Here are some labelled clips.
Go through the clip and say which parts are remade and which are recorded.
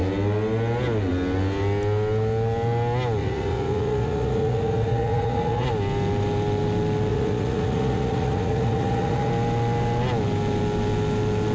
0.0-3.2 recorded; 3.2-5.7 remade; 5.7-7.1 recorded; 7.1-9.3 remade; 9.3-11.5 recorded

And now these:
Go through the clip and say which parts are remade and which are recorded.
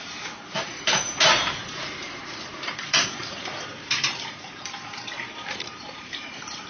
0.0-6.7 remade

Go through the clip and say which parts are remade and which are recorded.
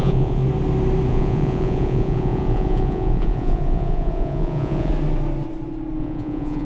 0.0-0.4 remade; 0.4-1.1 recorded; 1.1-4.9 remade; 4.9-6.0 recorded; 6.0-6.6 remade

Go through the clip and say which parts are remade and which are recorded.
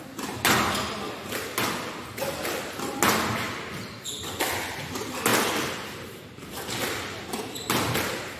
0.0-8.4 recorded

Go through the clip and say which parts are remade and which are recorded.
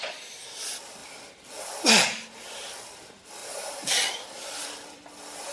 0.0-1.0 recorded; 1.0-1.6 remade; 1.6-3.4 recorded; 3.4-5.1 remade; 5.1-5.5 recorded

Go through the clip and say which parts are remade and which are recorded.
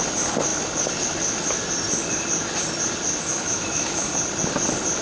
0.0-3.3 recorded; 3.3-4.1 remade; 4.1-5.0 recorded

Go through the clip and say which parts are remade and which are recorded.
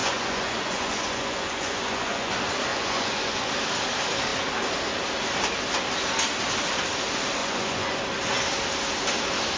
0.0-2.3 remade; 2.3-2.7 recorded; 2.7-3.5 remade; 3.5-7.4 recorded; 7.4-8.0 remade; 8.0-9.6 recorded